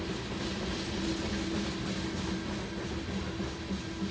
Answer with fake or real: real